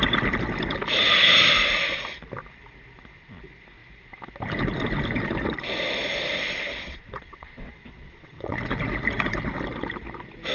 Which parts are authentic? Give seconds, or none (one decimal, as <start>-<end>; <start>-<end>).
0.0-6.7; 8.6-10.5